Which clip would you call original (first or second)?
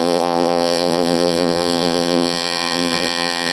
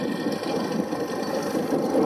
second